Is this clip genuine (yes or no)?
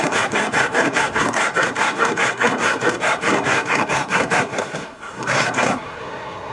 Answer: no